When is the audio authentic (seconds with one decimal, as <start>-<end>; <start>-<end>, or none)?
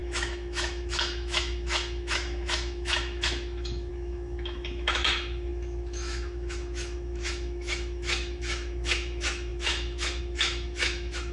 none